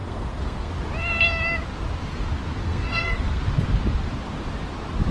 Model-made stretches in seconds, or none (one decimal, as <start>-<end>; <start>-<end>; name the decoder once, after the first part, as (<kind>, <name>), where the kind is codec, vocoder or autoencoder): 0.0-0.7 (codec, SNAC); 2.6-3.4